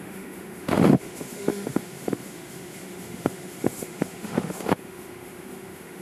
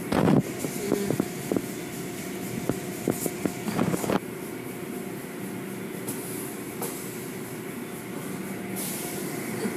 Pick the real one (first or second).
second